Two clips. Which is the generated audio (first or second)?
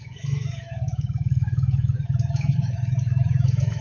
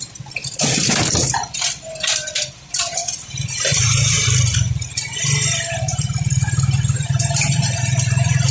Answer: first